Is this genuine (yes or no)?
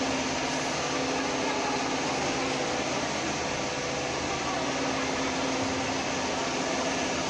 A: yes